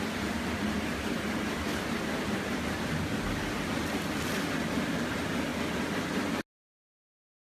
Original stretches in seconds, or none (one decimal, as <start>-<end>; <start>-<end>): 0.0-0.7; 3.0-7.5